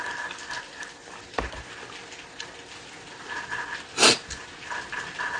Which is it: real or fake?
real